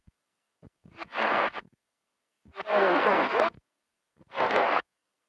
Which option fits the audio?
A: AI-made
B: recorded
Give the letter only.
A